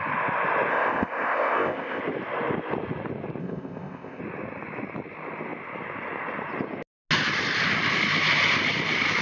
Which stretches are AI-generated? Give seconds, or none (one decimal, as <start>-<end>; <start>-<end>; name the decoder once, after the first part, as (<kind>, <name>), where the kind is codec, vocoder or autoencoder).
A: 0.7-2.0 (codec, ZipCodec); 3.4-4.2